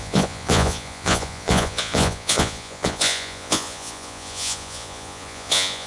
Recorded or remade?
remade